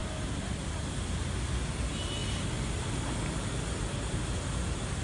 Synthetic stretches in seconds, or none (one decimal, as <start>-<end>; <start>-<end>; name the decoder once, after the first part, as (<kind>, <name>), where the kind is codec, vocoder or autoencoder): none